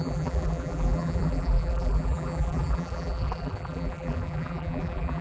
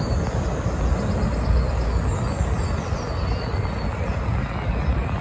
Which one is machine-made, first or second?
first